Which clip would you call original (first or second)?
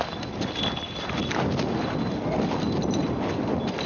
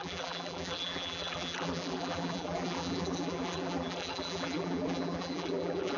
first